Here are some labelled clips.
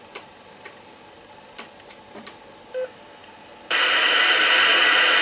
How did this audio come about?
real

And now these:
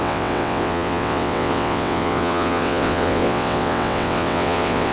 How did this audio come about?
fake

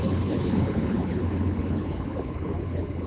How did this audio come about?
fake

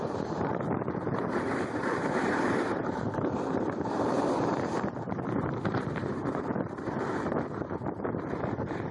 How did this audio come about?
fake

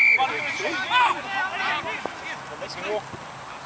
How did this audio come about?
real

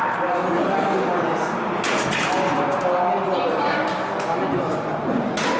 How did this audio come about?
real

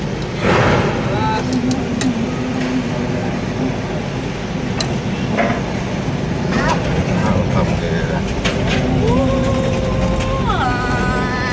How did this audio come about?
real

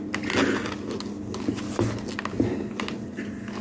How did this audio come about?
real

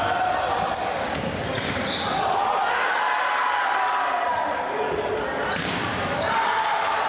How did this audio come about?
real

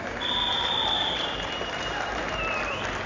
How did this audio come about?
fake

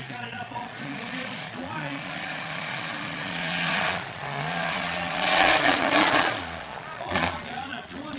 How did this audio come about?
fake